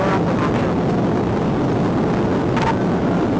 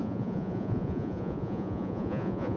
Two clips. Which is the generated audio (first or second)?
second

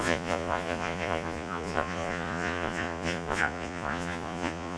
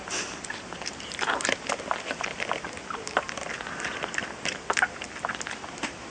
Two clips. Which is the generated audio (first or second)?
first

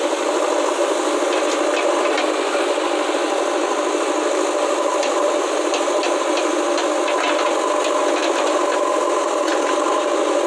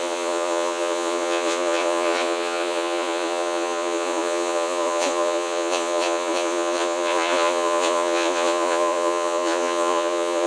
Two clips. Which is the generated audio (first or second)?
second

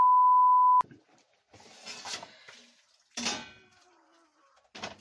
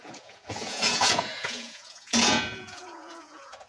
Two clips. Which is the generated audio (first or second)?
second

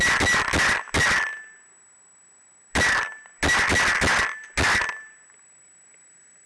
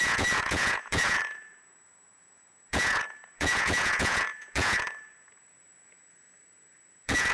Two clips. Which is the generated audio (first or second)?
second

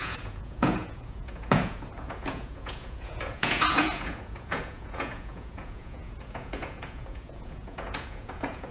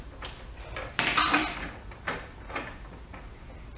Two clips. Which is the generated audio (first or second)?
first